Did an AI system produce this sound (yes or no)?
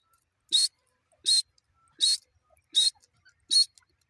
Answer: no